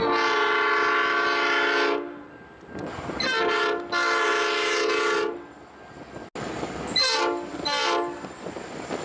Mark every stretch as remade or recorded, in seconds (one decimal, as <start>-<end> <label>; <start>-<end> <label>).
0.0-9.0 recorded